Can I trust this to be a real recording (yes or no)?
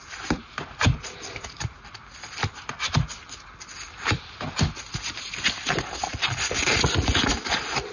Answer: yes